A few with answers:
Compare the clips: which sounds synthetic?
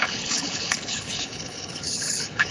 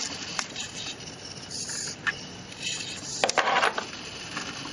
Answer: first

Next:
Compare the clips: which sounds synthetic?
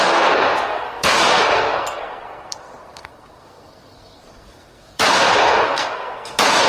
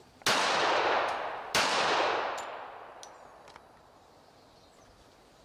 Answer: first